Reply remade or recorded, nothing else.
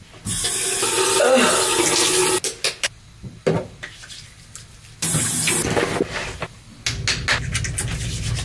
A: recorded